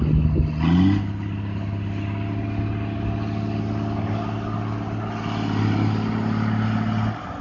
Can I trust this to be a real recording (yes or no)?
yes